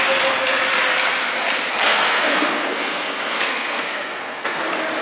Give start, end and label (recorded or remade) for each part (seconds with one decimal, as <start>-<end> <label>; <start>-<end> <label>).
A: 0.0-1.9 recorded; 1.9-4.6 remade; 4.6-5.0 recorded